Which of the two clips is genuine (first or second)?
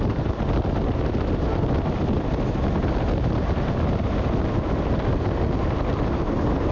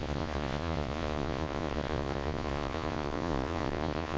first